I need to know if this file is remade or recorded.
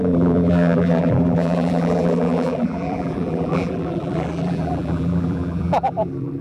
remade